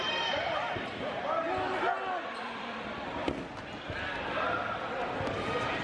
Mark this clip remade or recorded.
recorded